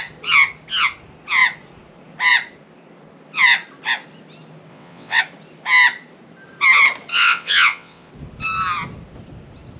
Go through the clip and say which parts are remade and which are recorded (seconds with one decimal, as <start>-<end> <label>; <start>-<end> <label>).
0.0-4.7 recorded; 4.7-5.2 remade; 5.2-7.1 recorded; 7.1-8.1 remade; 8.1-9.8 recorded

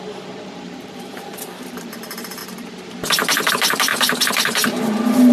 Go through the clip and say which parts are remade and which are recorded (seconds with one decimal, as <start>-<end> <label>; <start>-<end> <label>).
0.0-2.4 remade; 2.4-3.5 recorded; 3.5-5.3 remade